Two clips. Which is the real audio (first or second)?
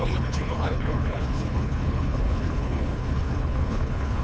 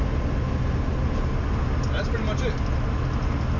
second